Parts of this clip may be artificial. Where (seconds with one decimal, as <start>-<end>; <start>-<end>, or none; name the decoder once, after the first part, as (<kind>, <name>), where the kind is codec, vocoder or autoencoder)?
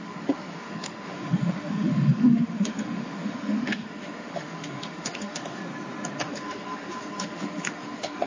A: 0.0-5.6 (autoencoder, DAC-VAE); 6.2-8.3